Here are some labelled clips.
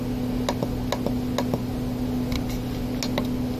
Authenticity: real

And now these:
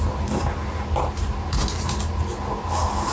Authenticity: real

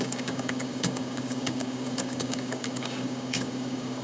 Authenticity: fake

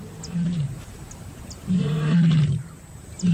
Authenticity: fake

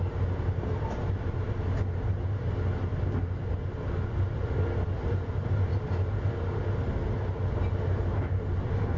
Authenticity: real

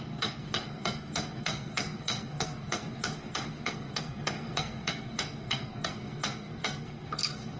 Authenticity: fake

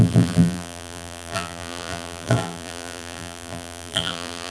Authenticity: fake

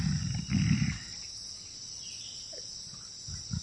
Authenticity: fake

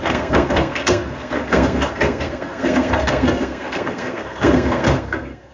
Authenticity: fake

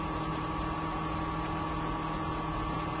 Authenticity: real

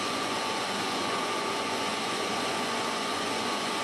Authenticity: fake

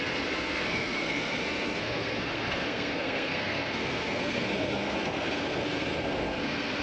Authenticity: fake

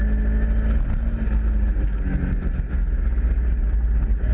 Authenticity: real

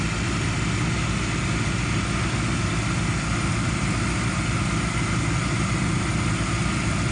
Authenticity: real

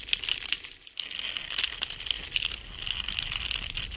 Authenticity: real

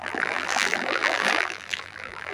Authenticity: fake